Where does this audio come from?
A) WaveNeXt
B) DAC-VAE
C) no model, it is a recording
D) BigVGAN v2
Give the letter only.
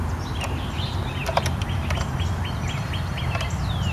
C